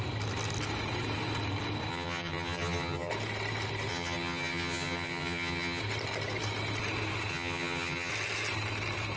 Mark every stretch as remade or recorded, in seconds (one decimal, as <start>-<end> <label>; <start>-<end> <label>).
0.0-1.9 recorded; 1.9-3.1 remade; 3.1-3.9 recorded; 3.9-5.8 remade; 5.8-7.3 recorded; 7.3-8.1 remade; 8.1-9.2 recorded